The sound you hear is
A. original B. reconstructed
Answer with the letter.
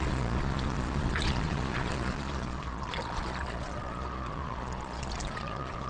B